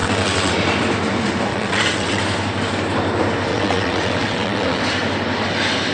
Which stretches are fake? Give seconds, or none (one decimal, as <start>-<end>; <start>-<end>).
0.0-0.5; 1.5-2.2; 3.5-4.8